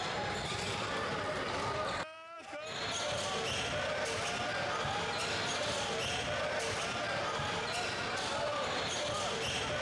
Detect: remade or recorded recorded